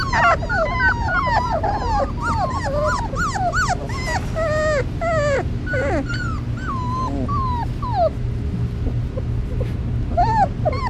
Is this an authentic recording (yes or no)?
yes